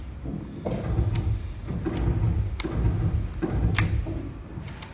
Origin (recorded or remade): recorded